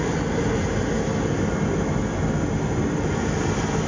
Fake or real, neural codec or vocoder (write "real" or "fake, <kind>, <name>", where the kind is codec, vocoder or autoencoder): real